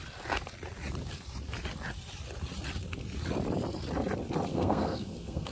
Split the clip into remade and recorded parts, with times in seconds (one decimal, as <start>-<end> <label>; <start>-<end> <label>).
0.0-4.5 recorded; 4.5-5.5 remade

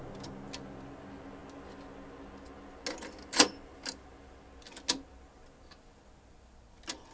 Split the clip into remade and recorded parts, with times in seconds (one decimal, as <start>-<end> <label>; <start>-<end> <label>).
0.0-7.1 recorded

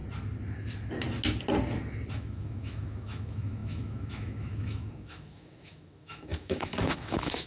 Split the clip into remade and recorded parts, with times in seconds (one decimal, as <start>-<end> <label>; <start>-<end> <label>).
0.0-2.1 recorded; 2.1-7.5 remade

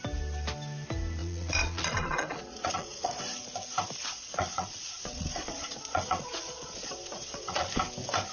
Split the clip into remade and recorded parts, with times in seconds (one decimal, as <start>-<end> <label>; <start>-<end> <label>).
0.0-1.2 recorded; 1.2-3.2 remade; 3.2-4.1 recorded; 4.1-7.7 remade; 7.7-8.3 recorded

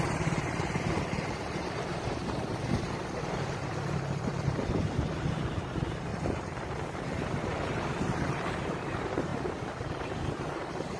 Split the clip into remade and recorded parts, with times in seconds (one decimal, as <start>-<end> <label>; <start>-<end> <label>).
0.0-2.2 remade; 2.2-3.0 recorded; 3.0-9.3 remade; 9.3-9.8 recorded; 9.8-11.0 remade